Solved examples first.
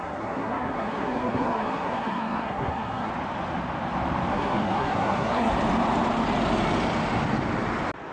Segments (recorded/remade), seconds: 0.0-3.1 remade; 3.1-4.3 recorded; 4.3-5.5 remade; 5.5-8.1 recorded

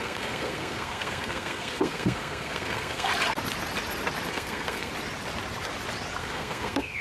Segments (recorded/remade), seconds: 0.0-3.1 remade; 3.1-4.3 recorded; 4.3-4.9 remade; 4.9-6.2 recorded; 6.2-7.0 remade

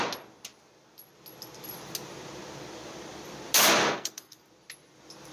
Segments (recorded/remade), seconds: 0.0-3.8 recorded; 3.8-4.4 remade; 4.4-5.3 recorded

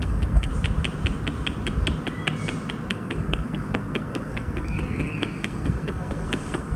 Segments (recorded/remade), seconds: 0.0-0.5 remade; 0.5-2.9 recorded; 2.9-6.8 remade

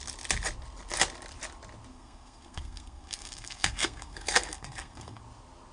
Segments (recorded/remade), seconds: 0.0-1.9 recorded; 1.9-5.2 remade; 5.2-5.7 recorded

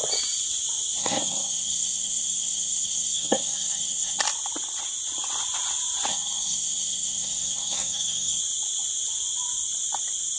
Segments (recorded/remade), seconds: 0.0-1.0 recorded; 1.0-4.2 remade; 4.2-6.1 recorded; 6.1-8.4 remade; 8.4-10.4 recorded

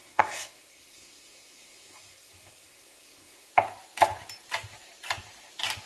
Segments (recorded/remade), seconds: 0.0-3.5 remade; 3.5-5.9 recorded

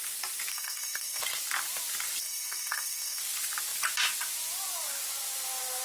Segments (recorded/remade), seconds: 0.0-0.5 recorded; 0.5-1.2 remade; 1.2-2.2 recorded; 2.2-3.2 remade; 3.2-5.8 recorded